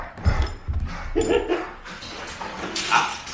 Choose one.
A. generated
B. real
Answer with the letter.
B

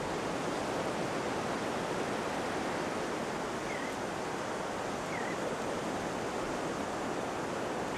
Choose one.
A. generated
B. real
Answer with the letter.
B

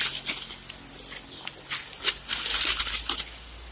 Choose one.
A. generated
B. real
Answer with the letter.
A